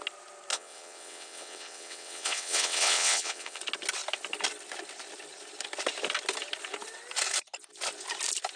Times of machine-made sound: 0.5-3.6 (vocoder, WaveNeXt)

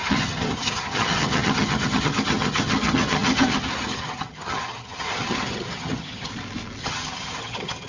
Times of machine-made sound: 0.0-6.3 (vocoder, HiFi-GAN); 6.8-7.9

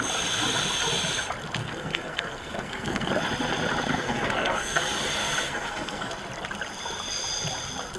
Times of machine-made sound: 1.6-3.1 (codec, SNAC); 3.9-4.8; 5.2-6.1

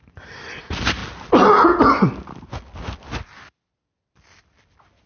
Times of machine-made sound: none

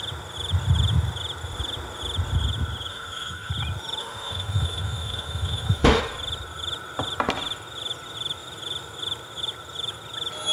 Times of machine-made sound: 2.9-3.5 (autoencoder, DAC-VAE); 4.0-6.0

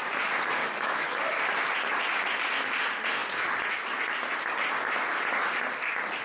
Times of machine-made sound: 0.6-1.2 (autoencoder, DAC-VAE)

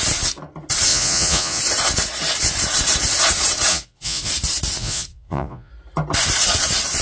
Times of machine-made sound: 0.9-1.6 (vocoder, Vocos); 3.7-4.3; 4.8-5.7